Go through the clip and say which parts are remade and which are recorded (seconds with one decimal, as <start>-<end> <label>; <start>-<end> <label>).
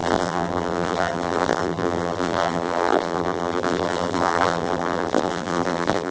0.0-6.1 remade